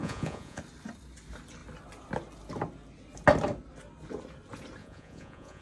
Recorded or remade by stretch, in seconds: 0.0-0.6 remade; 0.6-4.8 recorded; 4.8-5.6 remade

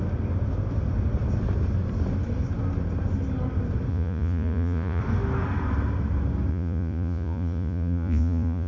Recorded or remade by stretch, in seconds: 0.0-3.9 recorded; 3.9-5.0 remade; 5.0-6.5 recorded; 6.5-8.7 remade

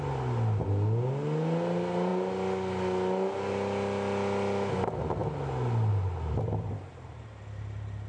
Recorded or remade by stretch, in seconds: 0.0-8.1 recorded